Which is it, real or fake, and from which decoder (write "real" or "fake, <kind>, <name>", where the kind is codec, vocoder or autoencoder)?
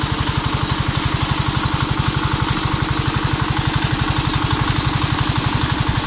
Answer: real